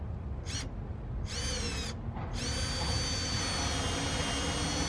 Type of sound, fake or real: real